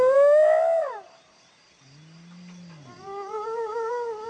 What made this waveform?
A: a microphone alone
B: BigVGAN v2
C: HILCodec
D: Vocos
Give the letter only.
A